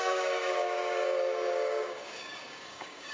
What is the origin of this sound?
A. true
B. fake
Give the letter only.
B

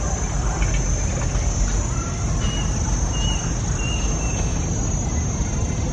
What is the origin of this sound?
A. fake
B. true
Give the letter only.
B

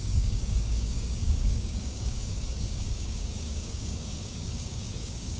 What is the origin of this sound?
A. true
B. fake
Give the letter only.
B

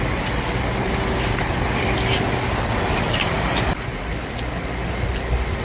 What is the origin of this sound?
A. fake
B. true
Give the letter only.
B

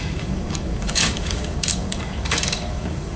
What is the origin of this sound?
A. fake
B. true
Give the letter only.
A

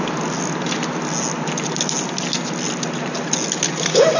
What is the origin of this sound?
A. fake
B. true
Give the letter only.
B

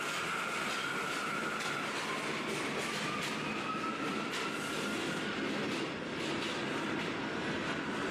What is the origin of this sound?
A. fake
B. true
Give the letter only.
B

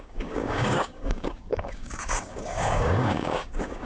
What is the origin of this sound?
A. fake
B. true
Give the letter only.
A